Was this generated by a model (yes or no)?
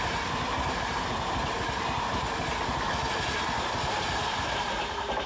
no